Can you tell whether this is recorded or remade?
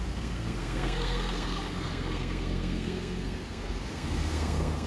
remade